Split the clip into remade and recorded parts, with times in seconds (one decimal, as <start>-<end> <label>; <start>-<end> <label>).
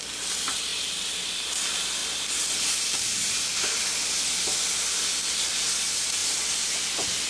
0.0-7.3 recorded